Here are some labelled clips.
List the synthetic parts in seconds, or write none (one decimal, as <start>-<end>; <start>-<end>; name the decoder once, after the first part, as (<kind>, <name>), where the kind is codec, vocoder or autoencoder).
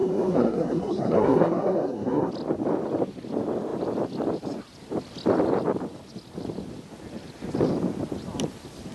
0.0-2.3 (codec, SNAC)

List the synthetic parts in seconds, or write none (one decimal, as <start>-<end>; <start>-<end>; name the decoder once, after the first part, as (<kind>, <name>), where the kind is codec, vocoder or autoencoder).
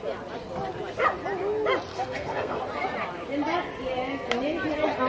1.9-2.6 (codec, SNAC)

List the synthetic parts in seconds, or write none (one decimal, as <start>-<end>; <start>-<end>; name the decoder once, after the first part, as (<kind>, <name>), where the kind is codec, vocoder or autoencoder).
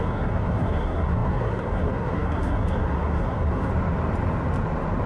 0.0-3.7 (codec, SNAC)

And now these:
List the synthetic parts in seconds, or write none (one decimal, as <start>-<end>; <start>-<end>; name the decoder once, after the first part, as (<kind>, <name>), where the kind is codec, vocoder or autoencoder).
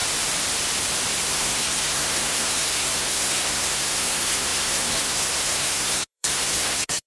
1.2-7.1 (codec, SNAC)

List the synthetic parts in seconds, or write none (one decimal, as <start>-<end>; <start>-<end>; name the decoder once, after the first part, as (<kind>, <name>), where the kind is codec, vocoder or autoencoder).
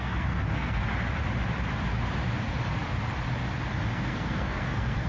0.0-0.8 (codec, SNAC); 3.9-5.1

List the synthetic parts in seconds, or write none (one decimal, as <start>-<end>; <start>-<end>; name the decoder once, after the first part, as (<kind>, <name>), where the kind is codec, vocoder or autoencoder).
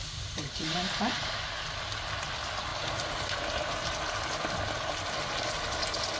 none